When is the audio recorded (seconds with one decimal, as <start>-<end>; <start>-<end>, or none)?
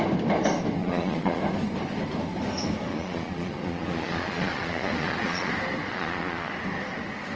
0.0-0.8; 1.4-2.9; 5.5-5.9; 6.5-7.4